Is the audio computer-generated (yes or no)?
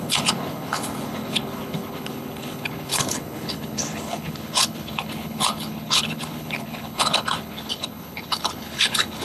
yes